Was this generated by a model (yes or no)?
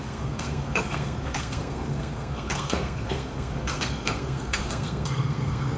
yes